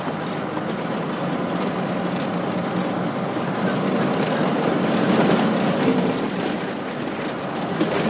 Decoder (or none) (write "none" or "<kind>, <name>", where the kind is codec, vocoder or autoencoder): none